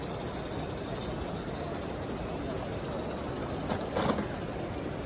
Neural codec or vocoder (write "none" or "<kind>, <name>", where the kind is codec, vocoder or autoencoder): none